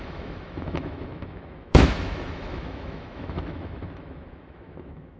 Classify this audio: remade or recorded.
remade